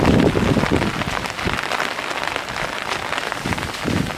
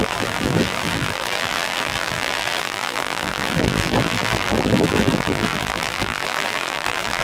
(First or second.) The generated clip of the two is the second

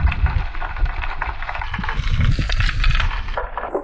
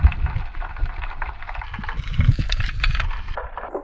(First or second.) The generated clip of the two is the second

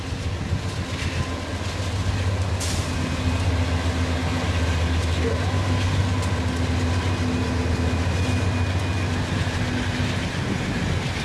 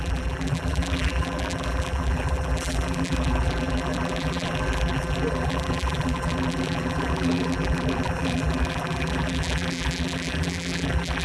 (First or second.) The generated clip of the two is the second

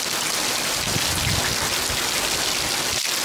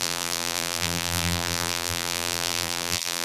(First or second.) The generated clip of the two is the second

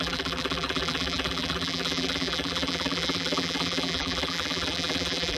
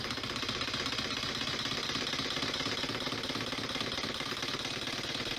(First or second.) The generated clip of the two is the first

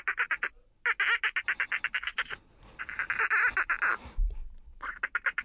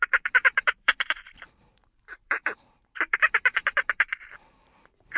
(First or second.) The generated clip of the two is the second